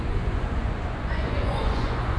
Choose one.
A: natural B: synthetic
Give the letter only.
B